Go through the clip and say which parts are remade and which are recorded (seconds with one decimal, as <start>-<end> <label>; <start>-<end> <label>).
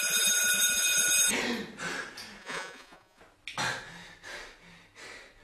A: 0.0-2.4 recorded; 2.4-3.2 remade; 3.2-5.4 recorded